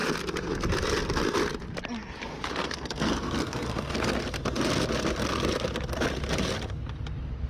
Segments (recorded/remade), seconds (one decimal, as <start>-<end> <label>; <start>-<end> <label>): 0.0-2.6 recorded; 2.6-4.2 remade; 4.2-7.5 recorded